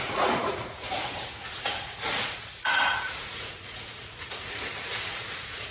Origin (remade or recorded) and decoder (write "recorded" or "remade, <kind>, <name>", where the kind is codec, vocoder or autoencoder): remade, vocoder, Vocos